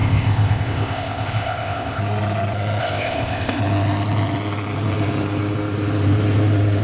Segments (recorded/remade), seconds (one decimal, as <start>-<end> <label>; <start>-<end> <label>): 0.0-2.0 remade; 2.0-2.8 recorded; 2.8-3.6 remade; 3.6-6.8 recorded